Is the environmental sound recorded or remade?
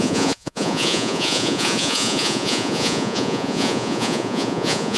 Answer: remade